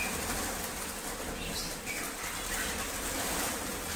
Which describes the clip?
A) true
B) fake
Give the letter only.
A